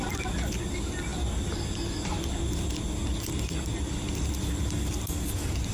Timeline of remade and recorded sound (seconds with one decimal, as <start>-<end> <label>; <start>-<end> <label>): 0.0-5.7 recorded